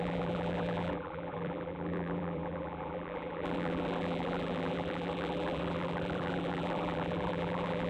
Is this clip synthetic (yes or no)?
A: yes